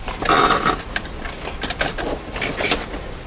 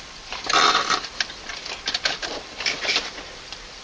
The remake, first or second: second